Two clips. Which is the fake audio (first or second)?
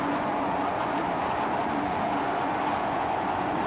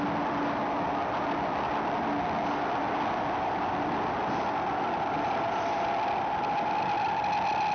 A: first